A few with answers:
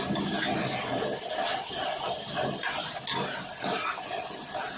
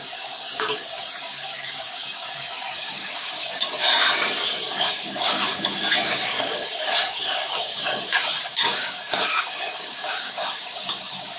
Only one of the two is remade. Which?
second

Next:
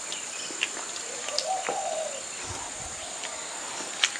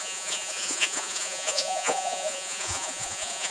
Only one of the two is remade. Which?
second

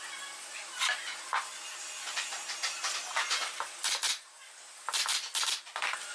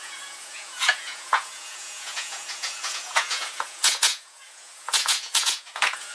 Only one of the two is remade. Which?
second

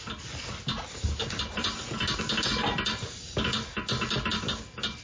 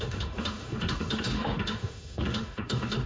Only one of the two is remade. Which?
second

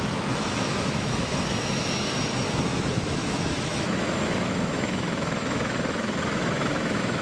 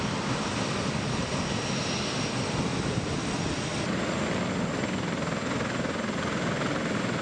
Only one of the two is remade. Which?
first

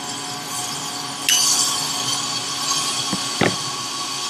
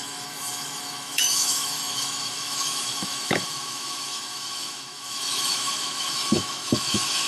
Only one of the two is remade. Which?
second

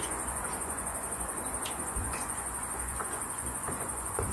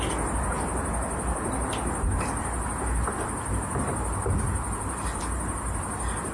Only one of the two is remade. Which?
first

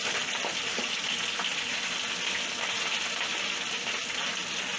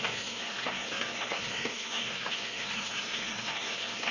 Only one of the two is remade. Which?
second